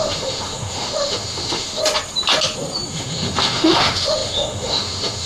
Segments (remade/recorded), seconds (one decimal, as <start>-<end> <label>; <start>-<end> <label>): 0.0-1.8 remade; 1.8-2.9 recorded; 2.9-5.3 remade